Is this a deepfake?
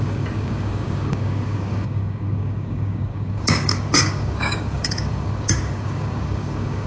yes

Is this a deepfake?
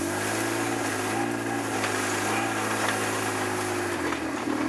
no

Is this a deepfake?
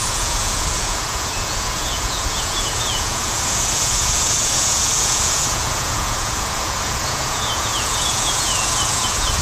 yes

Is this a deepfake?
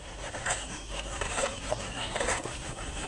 yes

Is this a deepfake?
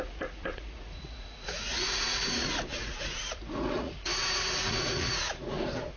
yes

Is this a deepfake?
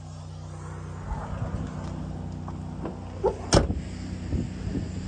no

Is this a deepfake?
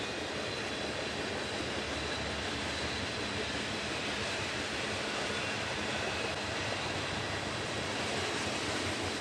no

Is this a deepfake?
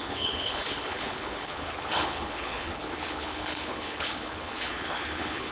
yes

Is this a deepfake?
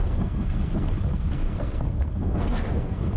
yes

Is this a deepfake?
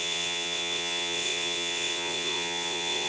yes